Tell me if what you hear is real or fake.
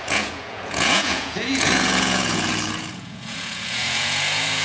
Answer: fake